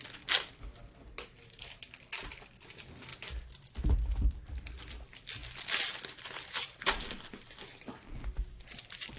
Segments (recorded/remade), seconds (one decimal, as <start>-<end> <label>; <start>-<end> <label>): 0.0-9.2 recorded